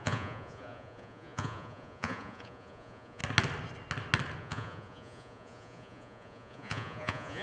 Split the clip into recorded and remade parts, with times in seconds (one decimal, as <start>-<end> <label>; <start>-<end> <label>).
0.0-3.2 remade; 3.2-4.4 recorded; 4.4-7.4 remade

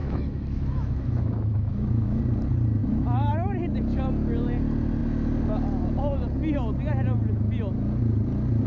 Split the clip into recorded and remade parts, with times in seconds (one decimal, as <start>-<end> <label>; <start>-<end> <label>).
0.0-2.2 remade; 2.2-2.8 recorded; 2.8-3.3 remade; 3.3-8.7 recorded

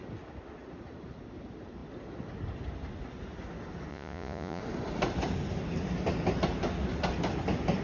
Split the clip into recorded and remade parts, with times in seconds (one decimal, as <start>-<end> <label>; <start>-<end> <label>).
0.0-3.9 recorded; 3.9-4.6 remade; 4.6-7.8 recorded